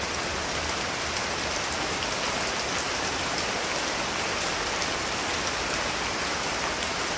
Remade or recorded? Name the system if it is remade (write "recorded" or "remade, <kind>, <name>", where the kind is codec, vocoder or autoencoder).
recorded